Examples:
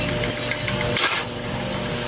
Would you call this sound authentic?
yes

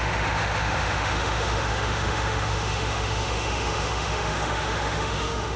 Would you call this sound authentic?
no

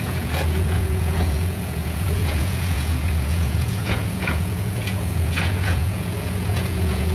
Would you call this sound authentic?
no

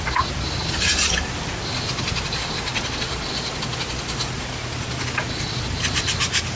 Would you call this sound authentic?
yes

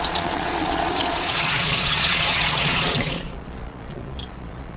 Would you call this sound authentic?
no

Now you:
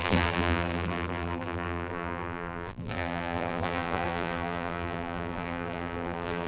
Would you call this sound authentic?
no